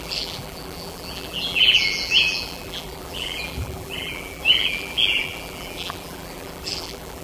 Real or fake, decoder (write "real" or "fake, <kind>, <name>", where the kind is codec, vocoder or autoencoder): fake, vocoder, BigVGAN v2